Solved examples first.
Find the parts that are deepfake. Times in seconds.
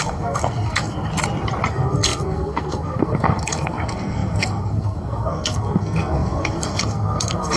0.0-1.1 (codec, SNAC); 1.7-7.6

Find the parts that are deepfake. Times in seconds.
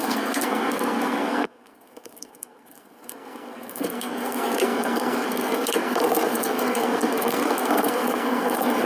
0.0-8.9 (codec, SNAC)